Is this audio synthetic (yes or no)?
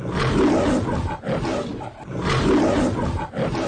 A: no